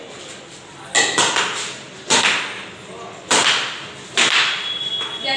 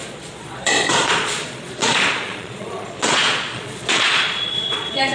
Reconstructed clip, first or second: second